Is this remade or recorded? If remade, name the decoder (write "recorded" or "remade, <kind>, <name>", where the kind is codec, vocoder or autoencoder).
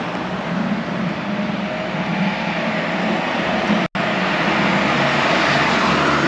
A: recorded